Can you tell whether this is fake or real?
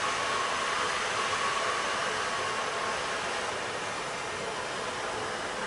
real